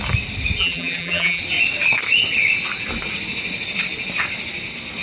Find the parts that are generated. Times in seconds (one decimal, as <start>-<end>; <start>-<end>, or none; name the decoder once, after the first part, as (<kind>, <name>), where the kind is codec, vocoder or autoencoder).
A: 0.6-1.4 (vocoder, BigVGAN v2)

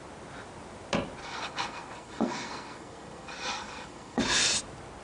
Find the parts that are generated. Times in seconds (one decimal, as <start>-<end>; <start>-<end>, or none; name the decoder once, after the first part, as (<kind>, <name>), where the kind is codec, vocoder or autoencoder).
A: 1.2-4.2 (codec, SNAC)